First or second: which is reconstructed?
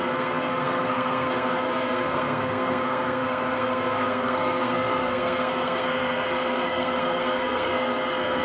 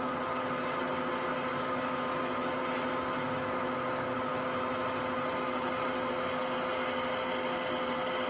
first